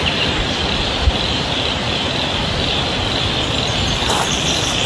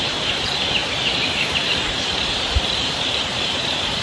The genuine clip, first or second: first